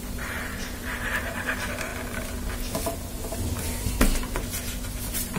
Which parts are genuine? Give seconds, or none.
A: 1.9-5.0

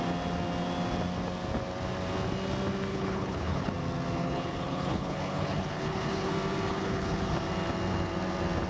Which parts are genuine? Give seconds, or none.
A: 0.0-2.9; 3.7-4.2; 6.3-6.7; 7.4-8.7

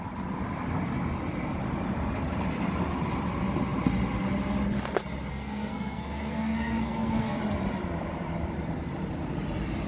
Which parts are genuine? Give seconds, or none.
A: 0.0-5.3; 7.4-9.9

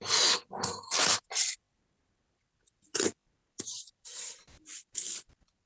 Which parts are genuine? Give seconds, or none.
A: 0.0-3.4